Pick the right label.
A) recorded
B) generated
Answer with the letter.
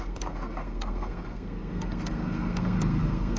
B